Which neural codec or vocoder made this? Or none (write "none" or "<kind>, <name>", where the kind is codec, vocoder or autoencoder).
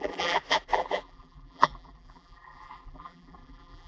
vocoder, BigVGAN v2